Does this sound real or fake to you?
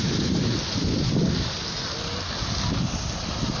real